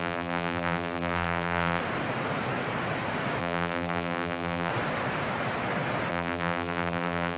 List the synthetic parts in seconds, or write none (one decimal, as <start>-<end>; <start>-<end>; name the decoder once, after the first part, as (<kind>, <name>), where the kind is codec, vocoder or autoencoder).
0.0-1.8 (vocoder, BigVGAN v2); 3.4-4.7; 6.1-7.4